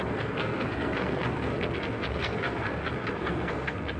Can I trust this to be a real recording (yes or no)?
no